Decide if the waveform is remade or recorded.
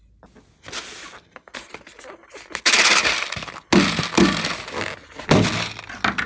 recorded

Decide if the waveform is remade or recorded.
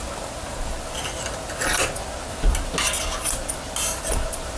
recorded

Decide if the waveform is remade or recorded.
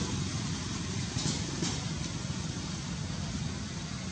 recorded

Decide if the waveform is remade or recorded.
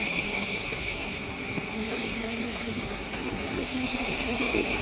remade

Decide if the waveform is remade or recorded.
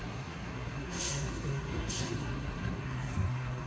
remade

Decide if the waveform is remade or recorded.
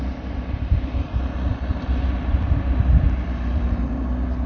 recorded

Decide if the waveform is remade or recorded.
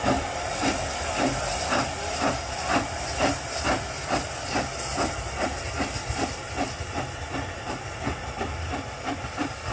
recorded